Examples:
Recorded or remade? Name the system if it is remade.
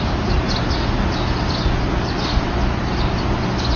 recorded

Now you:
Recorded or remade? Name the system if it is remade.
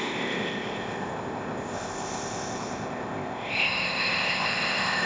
remade, codec, ZipCodec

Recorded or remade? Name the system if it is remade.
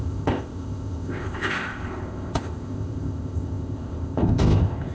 remade, codec, ZipCodec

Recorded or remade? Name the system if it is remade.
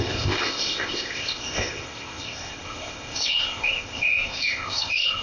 remade, codec, ZipCodec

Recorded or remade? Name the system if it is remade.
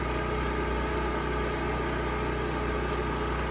recorded